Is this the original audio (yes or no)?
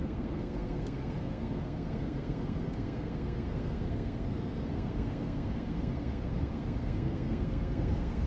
no